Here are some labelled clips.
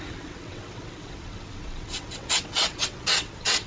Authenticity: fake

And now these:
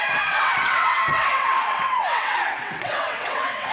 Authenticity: fake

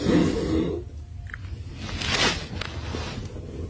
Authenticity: real